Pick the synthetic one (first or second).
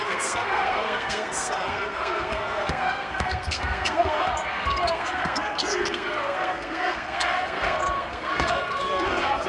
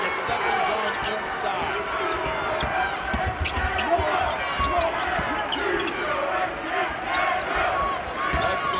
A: first